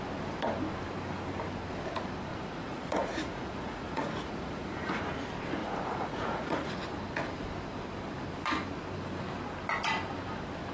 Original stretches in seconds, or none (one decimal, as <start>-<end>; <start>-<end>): 0.0-2.3; 5.0-5.6; 6.7-10.7